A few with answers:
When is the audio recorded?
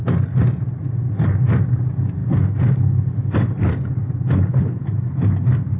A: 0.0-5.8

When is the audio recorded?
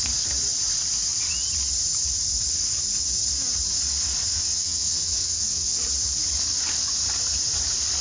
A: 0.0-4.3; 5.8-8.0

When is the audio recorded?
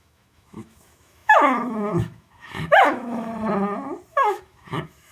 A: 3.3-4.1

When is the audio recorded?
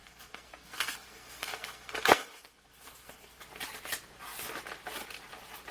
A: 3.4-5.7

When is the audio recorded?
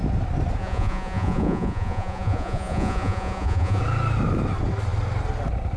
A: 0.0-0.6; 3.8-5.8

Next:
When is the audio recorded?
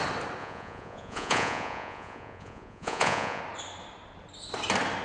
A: 0.0-0.4; 3.4-5.0